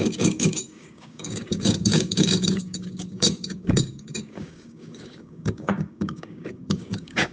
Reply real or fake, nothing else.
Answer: fake